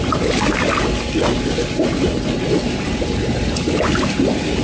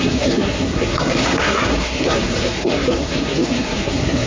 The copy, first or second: second